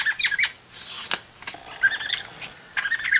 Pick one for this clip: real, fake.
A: real